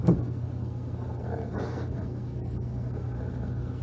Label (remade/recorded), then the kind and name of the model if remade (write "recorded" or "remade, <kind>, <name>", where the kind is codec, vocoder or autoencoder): remade, codec, SNAC